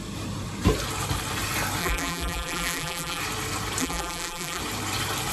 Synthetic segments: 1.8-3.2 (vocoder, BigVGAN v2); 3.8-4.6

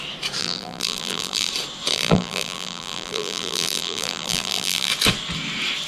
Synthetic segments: 0.4-1.5 (vocoder, BigVGAN v2); 1.9-4.9

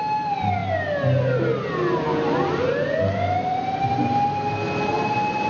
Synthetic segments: none

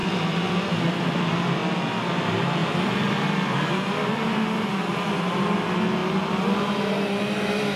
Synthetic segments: 0.0-1.0 (vocoder, BigVGAN v2); 2.6-5.1